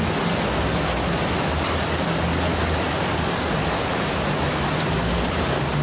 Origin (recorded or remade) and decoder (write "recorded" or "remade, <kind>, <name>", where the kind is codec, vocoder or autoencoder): recorded